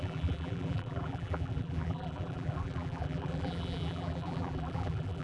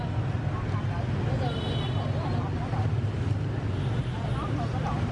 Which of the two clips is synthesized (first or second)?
first